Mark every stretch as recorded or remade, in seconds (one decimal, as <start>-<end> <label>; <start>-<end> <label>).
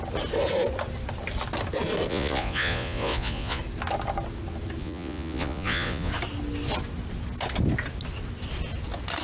0.0-2.1 recorded; 2.1-3.6 remade; 3.6-4.8 recorded; 4.8-6.1 remade; 6.1-9.2 recorded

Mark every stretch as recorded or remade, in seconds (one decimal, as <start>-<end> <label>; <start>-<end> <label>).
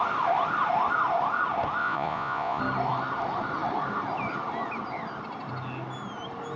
0.0-1.8 recorded; 1.8-2.6 remade; 2.6-6.6 recorded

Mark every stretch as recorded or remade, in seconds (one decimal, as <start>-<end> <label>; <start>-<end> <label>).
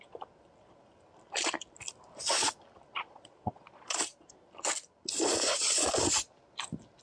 0.0-2.9 recorded; 2.9-4.0 remade; 4.0-7.0 recorded